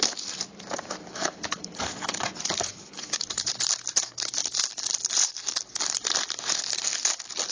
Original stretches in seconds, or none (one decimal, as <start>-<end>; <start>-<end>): 0.0-1.1; 2.2-2.7; 3.5-7.5